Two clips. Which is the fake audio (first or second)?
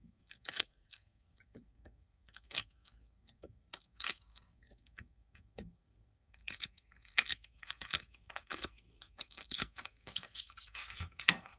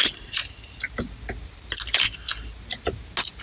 first